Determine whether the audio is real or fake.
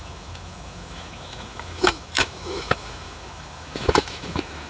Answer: fake